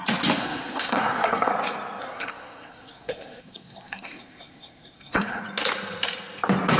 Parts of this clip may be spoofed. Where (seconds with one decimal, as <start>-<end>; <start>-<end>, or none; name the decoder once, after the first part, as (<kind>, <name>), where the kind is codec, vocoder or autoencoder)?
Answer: 0.4-1.5 (codec, SNAC); 2.0-5.4